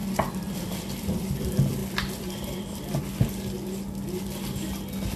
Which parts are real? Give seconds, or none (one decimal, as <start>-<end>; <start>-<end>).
1.4-1.8; 3.0-5.2